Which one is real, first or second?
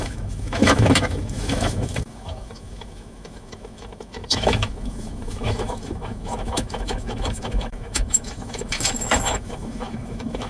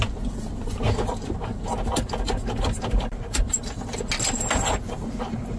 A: second